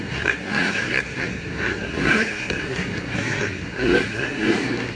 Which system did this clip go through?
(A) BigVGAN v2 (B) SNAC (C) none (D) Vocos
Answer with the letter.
B